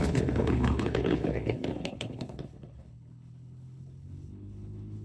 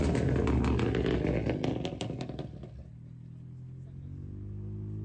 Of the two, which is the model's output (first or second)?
first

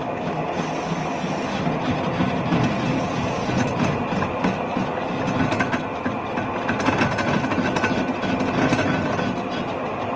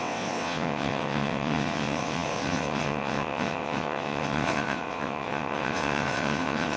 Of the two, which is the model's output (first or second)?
second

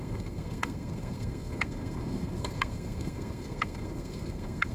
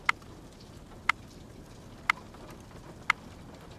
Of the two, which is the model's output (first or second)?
first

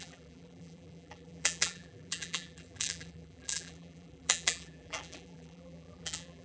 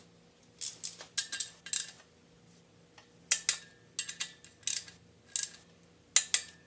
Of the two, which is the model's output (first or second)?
first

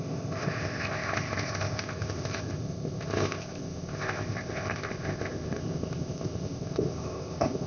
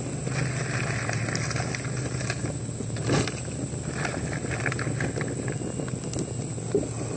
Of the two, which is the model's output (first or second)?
first